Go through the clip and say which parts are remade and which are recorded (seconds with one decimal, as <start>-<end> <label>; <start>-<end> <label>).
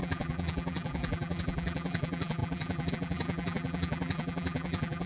0.0-5.1 remade